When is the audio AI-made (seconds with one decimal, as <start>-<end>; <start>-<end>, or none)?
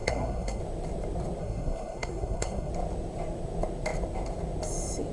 0.0-0.6; 1.4-2.7